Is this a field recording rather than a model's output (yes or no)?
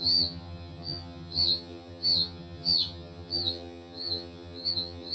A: no